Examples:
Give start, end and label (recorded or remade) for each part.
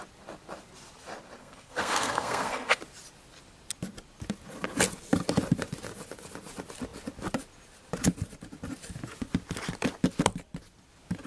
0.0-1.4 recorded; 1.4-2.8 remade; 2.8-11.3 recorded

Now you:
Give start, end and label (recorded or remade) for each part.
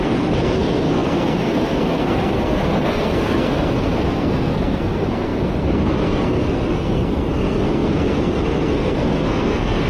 0.0-9.9 remade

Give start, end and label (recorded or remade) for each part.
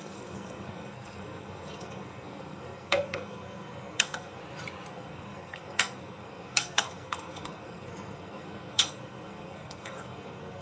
0.0-4.4 remade; 4.4-4.9 recorded; 4.9-10.6 remade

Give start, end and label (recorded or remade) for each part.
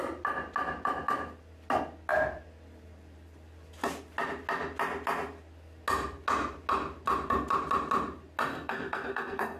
0.0-8.5 recorded; 8.5-9.6 remade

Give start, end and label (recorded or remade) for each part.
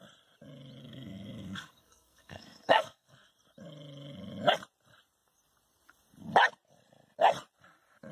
0.0-0.8 recorded; 0.8-3.3 remade; 3.3-8.1 recorded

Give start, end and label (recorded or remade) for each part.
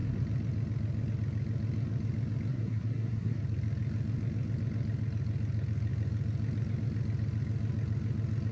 0.0-2.5 recorded; 2.5-3.4 remade; 3.4-8.5 recorded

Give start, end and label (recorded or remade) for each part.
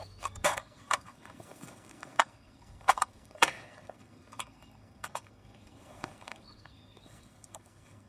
0.0-8.1 remade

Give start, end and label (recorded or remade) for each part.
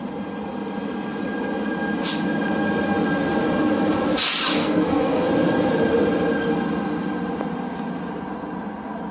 0.0-4.6 recorded; 4.6-5.2 remade; 5.2-9.1 recorded